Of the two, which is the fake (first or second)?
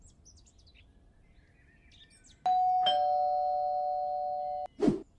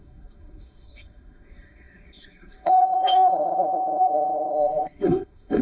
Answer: second